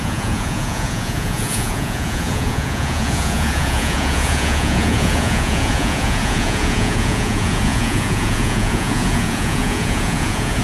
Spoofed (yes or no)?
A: yes